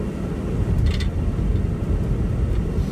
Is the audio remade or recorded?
recorded